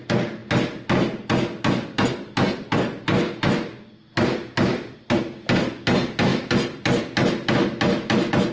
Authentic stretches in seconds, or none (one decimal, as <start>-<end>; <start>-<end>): 0.0-8.5